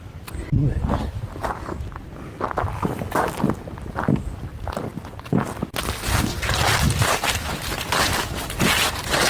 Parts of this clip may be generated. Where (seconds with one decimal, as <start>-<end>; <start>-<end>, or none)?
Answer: none

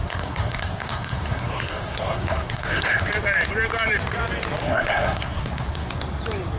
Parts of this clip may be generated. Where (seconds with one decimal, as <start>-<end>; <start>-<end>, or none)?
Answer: 0.0-3.1; 4.6-5.9

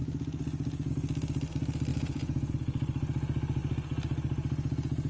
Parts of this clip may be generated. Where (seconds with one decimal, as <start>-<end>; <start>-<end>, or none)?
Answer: 1.9-2.5

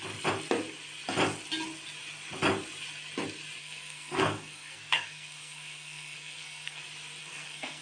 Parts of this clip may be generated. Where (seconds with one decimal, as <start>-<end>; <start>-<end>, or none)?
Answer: 3.6-6.8; 7.2-7.8